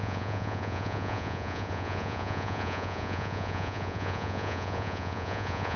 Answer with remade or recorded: remade